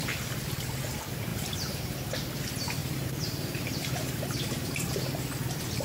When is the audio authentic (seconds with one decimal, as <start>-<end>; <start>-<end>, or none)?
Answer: 0.0-2.8; 4.9-5.8